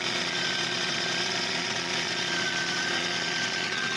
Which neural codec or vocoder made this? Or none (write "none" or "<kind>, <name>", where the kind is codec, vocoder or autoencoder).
vocoder, Vocos